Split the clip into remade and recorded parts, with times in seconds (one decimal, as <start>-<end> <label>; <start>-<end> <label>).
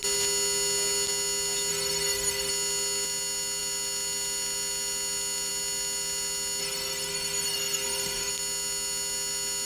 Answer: 0.0-1.7 recorded; 1.7-2.5 remade; 2.5-6.6 recorded; 6.6-8.3 remade; 8.3-9.7 recorded